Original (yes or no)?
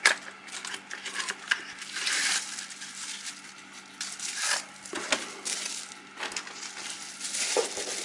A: yes